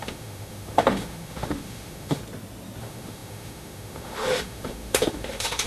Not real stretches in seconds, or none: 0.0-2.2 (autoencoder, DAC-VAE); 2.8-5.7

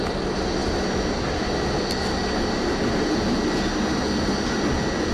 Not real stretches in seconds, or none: none

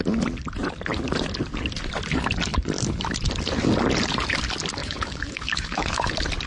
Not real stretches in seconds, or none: 4.8-6.1 (autoencoder, DAC-VAE)

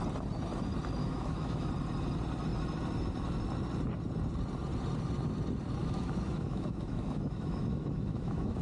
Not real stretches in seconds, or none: 1.0-1.7 (autoencoder, DAC-VAE); 5.8-8.6